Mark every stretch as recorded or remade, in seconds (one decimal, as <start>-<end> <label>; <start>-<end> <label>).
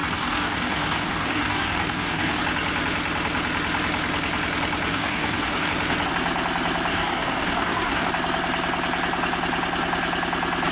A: 0.0-2.4 remade; 2.4-4.9 recorded; 4.9-5.7 remade; 5.7-6.9 recorded; 6.9-8.1 remade; 8.1-10.7 recorded